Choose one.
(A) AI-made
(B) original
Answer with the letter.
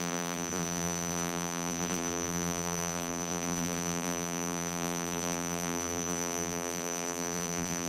A